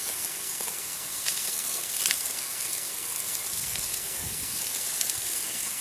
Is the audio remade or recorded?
remade